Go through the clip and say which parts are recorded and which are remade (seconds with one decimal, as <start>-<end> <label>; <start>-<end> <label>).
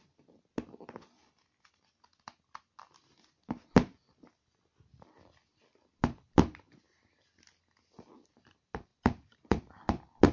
0.0-8.9 recorded; 8.9-9.8 remade; 9.8-10.3 recorded